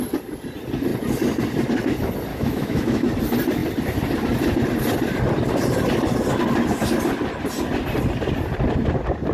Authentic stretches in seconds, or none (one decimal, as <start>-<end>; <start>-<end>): 0.0-2.3; 3.1-9.3